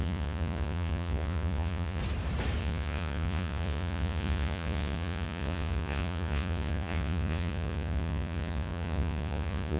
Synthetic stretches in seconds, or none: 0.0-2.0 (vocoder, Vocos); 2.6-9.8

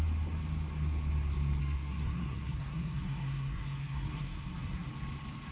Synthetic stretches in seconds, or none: 1.6-4.9 (codec, SNAC)

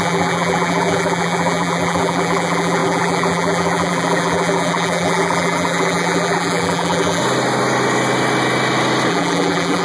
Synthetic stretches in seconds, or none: 0.0-7.2 (vocoder, BigVGAN v2); 9.1-9.8

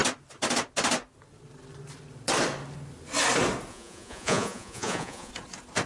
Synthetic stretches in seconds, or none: 3.7-5.3 (vocoder, Vocos)